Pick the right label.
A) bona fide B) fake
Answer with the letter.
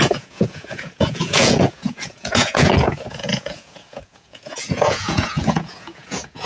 B